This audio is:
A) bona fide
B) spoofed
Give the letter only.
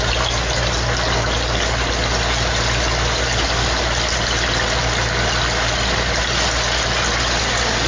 A